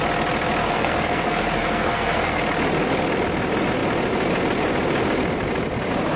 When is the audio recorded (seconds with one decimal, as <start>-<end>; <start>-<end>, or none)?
0.0-0.6; 2.4-6.2